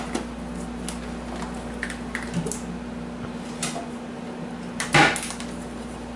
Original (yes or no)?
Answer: yes